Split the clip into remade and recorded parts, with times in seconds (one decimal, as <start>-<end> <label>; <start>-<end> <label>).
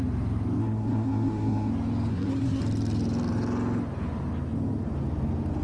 0.0-0.6 recorded; 0.6-1.7 remade; 1.7-2.1 recorded; 2.1-2.6 remade; 2.6-5.6 recorded